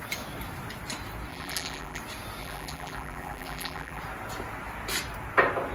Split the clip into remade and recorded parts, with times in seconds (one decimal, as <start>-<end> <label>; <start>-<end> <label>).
0.0-1.3 recorded; 1.3-2.0 remade; 2.0-2.4 recorded; 2.4-4.0 remade; 4.0-5.7 recorded

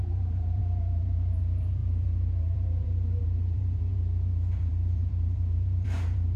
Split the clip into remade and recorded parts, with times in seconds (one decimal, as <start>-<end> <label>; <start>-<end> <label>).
0.0-6.4 remade

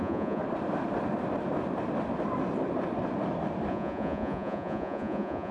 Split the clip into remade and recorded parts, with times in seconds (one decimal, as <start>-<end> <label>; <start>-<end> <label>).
0.0-0.4 remade; 0.4-3.7 recorded; 3.7-5.5 remade

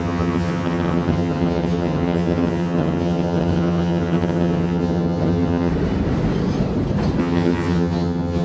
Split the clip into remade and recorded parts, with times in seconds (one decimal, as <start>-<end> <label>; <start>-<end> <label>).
0.0-5.7 remade; 5.7-7.2 recorded; 7.2-8.4 remade